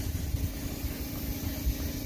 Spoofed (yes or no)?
no